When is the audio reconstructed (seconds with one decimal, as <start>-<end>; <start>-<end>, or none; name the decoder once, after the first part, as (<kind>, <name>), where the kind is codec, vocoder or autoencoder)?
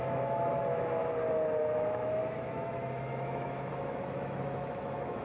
0.0-1.0 (autoencoder, DAC-VAE); 1.6-5.2